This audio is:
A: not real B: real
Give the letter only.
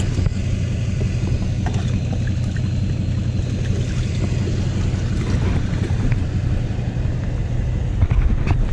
B